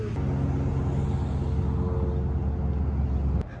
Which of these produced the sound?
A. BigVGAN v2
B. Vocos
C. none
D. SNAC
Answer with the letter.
C